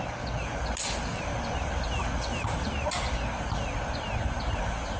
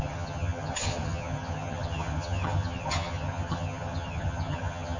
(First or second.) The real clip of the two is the first